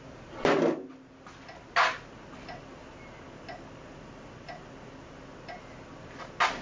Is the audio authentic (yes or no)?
yes